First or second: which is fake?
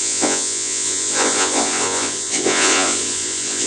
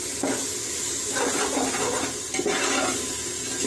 first